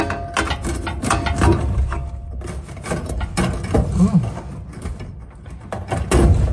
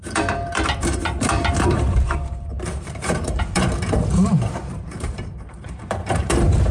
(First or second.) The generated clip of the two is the second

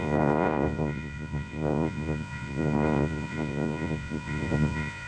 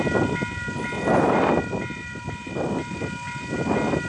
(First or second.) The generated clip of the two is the first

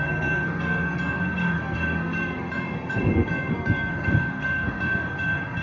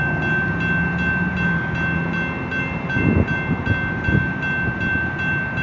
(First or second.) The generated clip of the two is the first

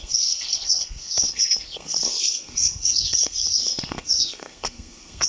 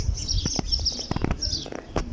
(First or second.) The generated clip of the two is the first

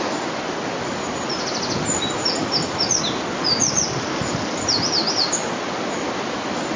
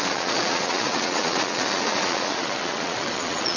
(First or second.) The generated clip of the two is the second